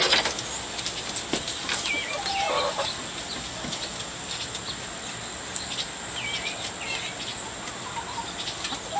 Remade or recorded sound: recorded